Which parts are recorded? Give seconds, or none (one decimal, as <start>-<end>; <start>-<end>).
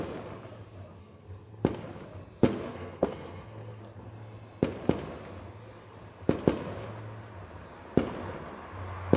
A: 0.0-1.0; 1.6-2.7; 3.8-9.2